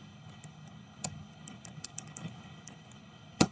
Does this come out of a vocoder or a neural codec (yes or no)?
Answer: yes